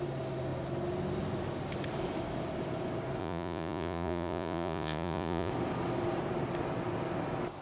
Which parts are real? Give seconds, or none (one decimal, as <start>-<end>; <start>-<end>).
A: 0.0-3.2; 5.5-7.6